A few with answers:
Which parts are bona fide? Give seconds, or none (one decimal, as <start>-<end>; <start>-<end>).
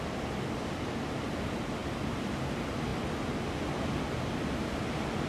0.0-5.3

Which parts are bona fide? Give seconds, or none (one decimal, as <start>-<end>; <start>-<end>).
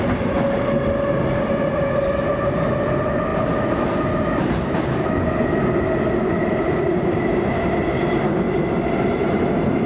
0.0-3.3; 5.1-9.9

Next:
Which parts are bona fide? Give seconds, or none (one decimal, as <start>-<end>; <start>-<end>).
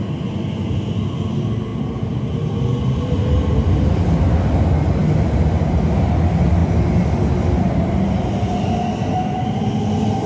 0.0-10.3